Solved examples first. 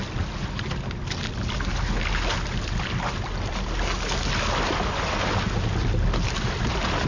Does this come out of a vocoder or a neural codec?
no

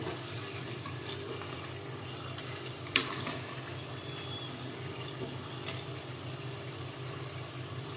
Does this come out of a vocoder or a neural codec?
no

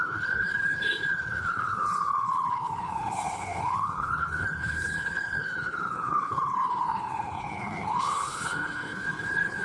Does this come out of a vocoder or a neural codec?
yes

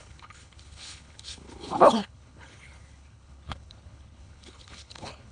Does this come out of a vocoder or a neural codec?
yes